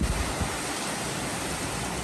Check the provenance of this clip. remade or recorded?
recorded